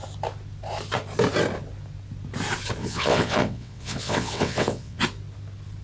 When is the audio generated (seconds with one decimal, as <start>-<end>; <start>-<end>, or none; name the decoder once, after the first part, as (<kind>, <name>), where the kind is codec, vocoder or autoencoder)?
2.8-5.0 (vocoder, WaveNeXt)